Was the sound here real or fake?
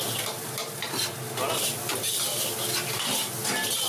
real